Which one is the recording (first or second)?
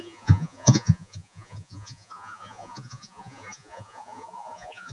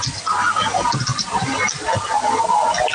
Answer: second